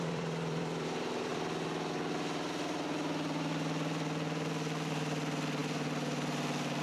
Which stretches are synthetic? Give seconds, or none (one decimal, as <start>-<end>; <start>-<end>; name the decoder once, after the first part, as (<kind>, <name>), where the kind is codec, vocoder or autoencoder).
0.0-6.8 (vocoder, BigVGAN v2)